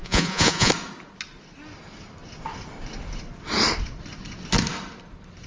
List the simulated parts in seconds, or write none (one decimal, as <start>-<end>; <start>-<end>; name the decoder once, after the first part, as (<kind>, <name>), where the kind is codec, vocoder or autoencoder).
0.0-0.7 (vocoder, Vocos)